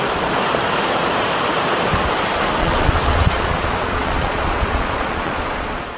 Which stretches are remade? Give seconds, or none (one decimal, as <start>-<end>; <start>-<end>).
2.6-6.0